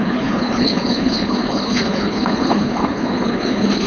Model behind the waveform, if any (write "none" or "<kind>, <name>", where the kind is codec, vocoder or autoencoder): codec, HILCodec